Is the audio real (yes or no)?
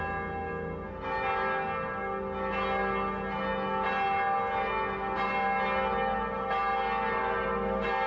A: yes